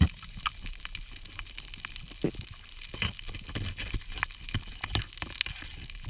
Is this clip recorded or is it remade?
recorded